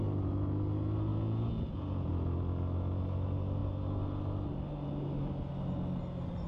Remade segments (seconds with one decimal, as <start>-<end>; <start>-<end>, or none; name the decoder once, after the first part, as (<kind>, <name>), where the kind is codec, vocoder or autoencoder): 1.1-2.1 (vocoder, Vocos)